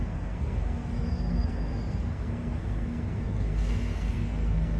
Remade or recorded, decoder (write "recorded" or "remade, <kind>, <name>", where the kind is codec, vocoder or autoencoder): remade, codec, SNAC